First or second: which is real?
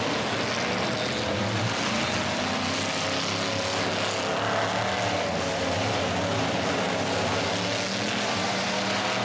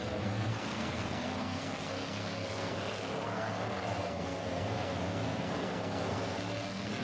first